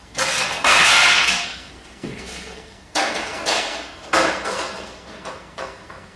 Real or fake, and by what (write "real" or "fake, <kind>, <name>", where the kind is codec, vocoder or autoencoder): fake, codec, SNAC